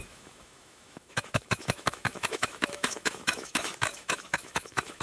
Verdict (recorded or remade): remade